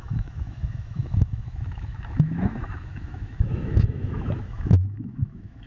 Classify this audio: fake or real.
fake